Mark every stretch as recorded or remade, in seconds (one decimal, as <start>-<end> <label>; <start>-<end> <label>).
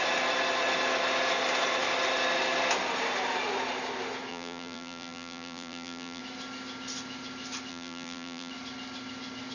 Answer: 0.0-4.3 recorded; 4.3-6.2 remade; 6.2-7.7 recorded; 7.7-8.5 remade; 8.5-9.5 recorded